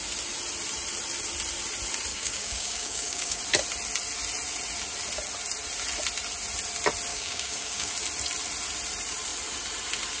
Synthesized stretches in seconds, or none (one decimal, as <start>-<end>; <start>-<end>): 2.1-3.4; 7.1-7.9